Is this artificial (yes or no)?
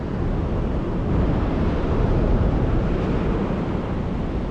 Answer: no